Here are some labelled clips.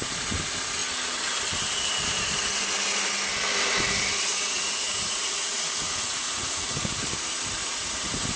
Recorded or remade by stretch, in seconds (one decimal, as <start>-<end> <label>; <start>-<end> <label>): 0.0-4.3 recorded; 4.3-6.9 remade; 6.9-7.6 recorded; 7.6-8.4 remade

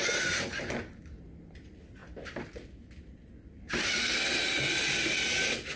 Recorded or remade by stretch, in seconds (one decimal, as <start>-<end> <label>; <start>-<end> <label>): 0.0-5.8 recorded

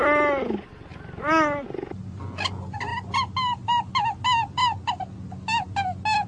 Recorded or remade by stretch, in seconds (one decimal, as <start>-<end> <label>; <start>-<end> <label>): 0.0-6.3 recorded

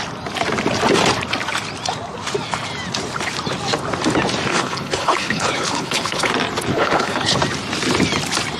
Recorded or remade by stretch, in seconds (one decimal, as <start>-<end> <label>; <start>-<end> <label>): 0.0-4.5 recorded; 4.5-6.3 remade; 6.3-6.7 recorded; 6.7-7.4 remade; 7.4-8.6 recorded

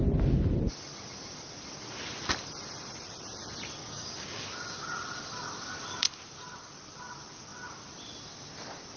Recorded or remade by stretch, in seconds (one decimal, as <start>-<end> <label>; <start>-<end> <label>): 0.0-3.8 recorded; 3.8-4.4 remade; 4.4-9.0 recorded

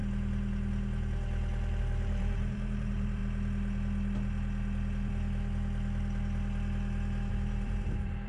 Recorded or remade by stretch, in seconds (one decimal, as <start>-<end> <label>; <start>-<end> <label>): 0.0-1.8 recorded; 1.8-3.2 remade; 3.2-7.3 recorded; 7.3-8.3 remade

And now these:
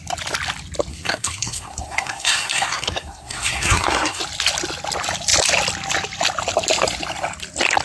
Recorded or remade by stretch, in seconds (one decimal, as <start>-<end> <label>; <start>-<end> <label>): 0.0-0.9 recorded; 0.9-4.2 remade; 4.2-7.8 recorded

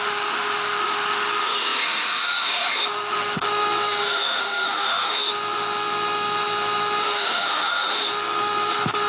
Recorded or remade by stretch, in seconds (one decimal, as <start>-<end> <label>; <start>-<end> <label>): 0.0-9.1 remade